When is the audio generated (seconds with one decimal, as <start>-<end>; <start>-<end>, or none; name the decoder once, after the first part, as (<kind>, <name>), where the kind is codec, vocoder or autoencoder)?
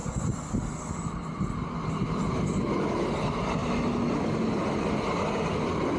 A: none